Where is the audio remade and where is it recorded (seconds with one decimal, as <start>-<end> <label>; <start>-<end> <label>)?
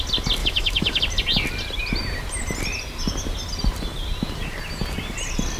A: 0.0-0.4 recorded; 0.4-1.0 remade; 1.0-5.6 recorded